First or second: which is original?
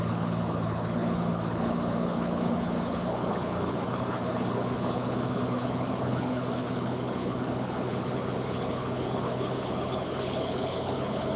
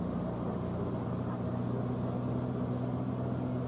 second